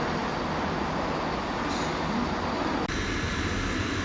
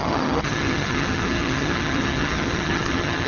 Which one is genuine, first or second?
first